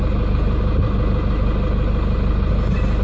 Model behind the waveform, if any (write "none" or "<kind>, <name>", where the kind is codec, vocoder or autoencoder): none